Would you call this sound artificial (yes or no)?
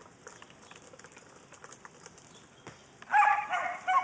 no